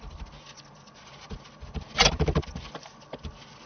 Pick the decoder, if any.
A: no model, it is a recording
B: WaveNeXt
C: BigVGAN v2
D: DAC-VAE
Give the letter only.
A